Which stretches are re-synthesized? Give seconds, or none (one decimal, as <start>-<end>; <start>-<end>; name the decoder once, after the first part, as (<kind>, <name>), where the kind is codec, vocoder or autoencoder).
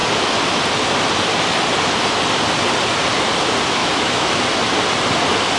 3.8-4.4 (autoencoder, DAC-VAE)